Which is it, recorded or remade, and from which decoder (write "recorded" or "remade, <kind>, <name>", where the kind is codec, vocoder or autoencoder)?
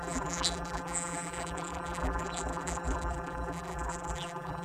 remade, vocoder, BigVGAN v2